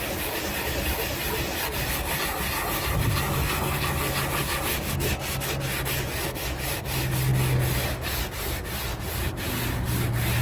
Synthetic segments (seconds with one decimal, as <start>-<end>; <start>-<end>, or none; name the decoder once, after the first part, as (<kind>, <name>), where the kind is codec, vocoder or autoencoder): 3.4-3.9 (codec, SNAC)